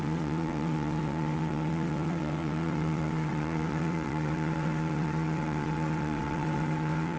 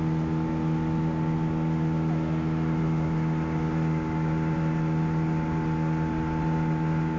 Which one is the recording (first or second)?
second